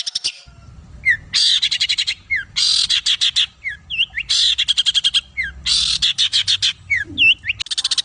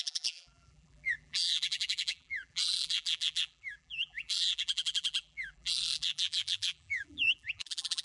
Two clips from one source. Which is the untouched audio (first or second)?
first